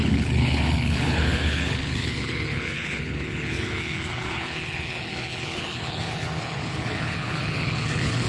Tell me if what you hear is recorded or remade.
remade